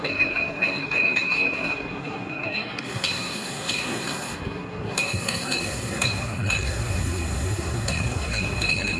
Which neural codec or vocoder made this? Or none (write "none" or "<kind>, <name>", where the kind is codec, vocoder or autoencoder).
codec, SNAC